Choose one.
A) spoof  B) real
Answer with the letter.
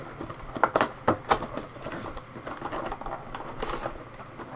A